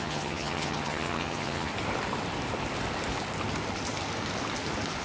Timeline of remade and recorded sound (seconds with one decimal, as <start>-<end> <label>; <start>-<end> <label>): 0.0-1.7 remade; 1.7-5.0 recorded